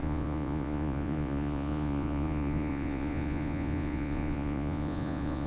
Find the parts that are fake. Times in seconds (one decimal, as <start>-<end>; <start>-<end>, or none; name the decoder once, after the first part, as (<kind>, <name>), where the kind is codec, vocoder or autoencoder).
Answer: 0.0-5.5 (vocoder, Vocos)